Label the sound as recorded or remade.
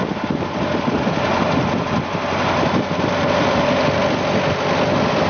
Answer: recorded